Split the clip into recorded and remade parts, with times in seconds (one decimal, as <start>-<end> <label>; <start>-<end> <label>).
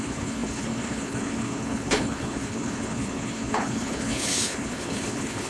0.0-5.5 remade